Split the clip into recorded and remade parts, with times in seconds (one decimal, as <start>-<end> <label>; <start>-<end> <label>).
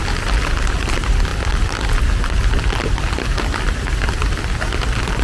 0.0-5.2 recorded